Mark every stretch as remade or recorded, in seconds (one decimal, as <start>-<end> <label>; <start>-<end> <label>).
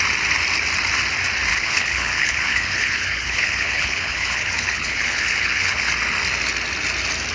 0.0-1.5 recorded; 1.5-5.9 remade; 5.9-7.3 recorded